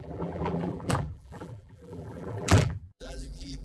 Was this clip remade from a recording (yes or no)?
yes